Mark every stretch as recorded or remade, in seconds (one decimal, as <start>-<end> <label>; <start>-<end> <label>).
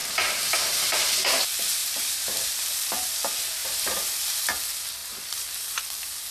0.0-1.0 remade; 1.0-1.8 recorded; 1.8-2.5 remade; 2.5-3.6 recorded; 3.6-4.5 remade; 4.5-5.0 recorded; 5.0-5.8 remade; 5.8-6.3 recorded